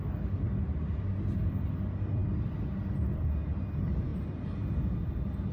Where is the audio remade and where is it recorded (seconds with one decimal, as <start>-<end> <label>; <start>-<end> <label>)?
0.0-2.2 recorded; 2.2-3.3 remade; 3.3-5.5 recorded